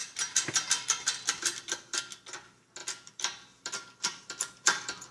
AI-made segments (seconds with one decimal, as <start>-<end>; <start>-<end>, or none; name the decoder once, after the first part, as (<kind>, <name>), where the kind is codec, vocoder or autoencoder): 0.0-2.0 (vocoder, BigVGAN v2); 2.8-5.1